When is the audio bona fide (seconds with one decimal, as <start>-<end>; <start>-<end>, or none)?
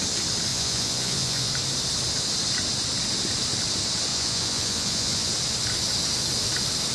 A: 0.0-0.5; 1.5-4.1; 5.3-6.9